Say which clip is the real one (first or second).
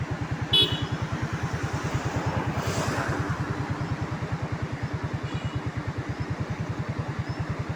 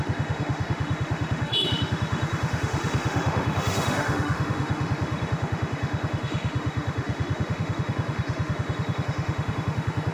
first